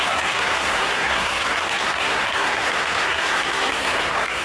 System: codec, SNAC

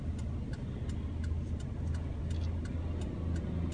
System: none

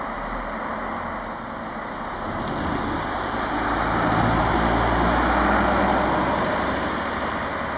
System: none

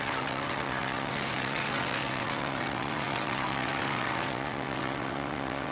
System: vocoder, WaveNeXt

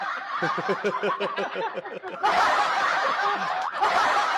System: vocoder, BigVGAN v2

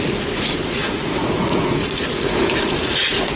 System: vocoder, Vocos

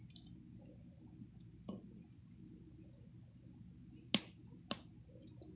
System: none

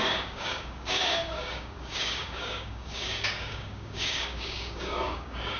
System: codec, DAC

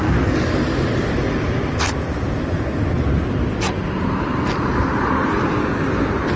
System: none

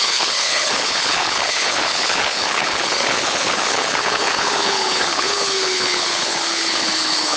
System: codec, HILCodec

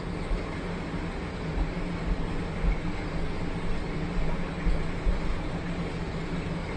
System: none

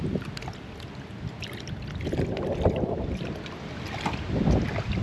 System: none